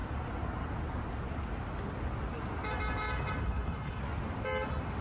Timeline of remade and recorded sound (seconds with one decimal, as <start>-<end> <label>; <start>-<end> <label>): 0.0-3.4 recorded; 3.4-4.0 remade; 4.0-5.0 recorded